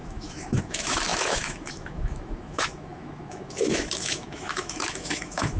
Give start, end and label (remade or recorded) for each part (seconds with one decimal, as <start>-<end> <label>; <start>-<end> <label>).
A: 0.0-5.6 remade